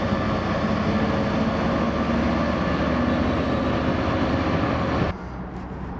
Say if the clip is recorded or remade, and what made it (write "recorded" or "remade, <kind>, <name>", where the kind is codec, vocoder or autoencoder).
recorded